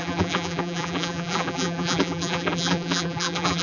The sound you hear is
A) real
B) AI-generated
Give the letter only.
B